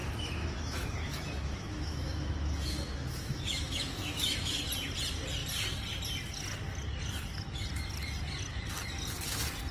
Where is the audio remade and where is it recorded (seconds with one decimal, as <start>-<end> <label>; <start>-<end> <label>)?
0.0-4.6 remade; 4.6-9.7 recorded